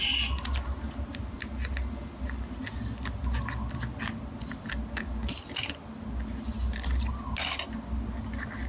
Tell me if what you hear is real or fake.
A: real